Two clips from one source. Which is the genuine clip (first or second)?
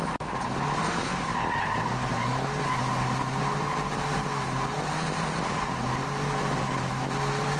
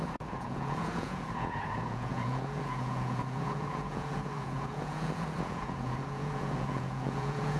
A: first